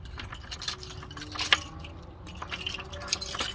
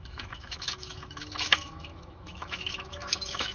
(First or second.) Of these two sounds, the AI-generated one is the second